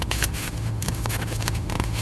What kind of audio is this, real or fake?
fake